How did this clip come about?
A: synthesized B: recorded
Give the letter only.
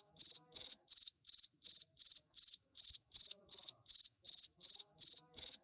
A